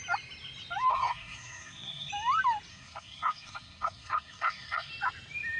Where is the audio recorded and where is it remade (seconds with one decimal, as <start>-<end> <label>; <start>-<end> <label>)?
0.0-0.9 recorded; 0.9-2.1 remade; 2.1-2.7 recorded; 2.7-4.9 remade; 4.9-5.6 recorded